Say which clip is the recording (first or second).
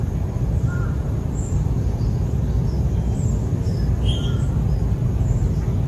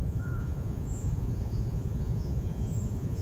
first